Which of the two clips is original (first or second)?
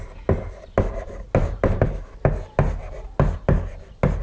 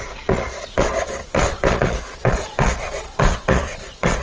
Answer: first